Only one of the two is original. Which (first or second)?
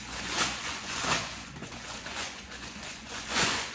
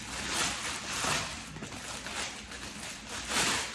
second